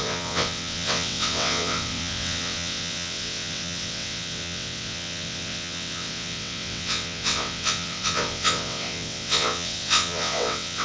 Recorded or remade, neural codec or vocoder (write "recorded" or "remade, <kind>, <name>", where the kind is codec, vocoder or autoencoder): remade, vocoder, WaveNeXt